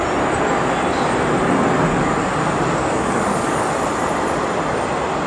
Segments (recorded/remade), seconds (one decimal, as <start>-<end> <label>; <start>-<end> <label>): 0.0-1.9 recorded; 1.9-3.7 remade; 3.7-5.3 recorded